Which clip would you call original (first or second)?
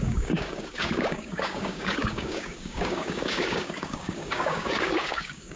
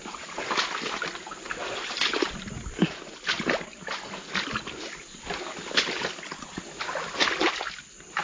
second